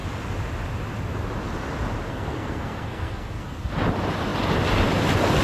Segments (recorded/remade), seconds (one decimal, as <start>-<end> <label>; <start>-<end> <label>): 0.0-2.1 recorded; 2.1-3.7 remade; 3.7-5.4 recorded